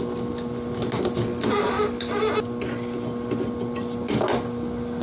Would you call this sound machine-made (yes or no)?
no